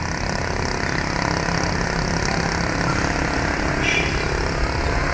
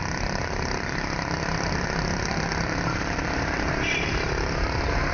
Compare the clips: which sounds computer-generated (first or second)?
second